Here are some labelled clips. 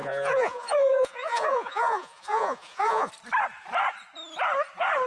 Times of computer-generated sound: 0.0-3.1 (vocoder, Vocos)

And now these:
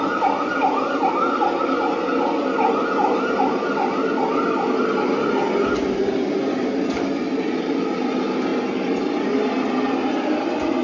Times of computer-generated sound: none

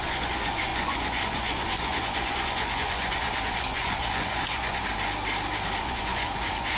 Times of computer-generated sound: 0.0-4.8 (vocoder, Vocos); 5.8-6.8